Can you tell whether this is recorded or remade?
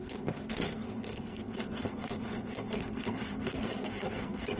remade